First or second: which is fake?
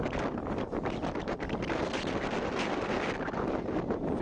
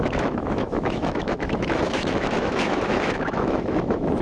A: second